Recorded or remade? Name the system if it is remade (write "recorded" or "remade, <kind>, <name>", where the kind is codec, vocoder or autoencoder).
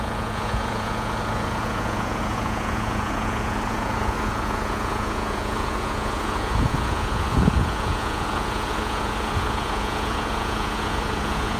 remade, vocoder, Vocos